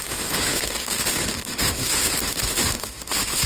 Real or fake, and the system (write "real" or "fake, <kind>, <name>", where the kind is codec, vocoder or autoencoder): fake, autoencoder, DAC-VAE